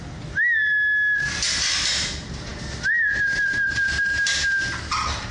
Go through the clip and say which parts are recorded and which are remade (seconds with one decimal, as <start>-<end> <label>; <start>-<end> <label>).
0.0-5.3 recorded